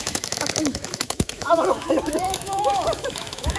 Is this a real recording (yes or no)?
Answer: no